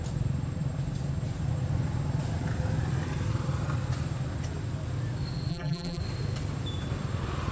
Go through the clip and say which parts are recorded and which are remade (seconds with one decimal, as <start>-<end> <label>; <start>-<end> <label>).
0.0-5.5 recorded; 5.5-6.0 remade; 6.0-7.5 recorded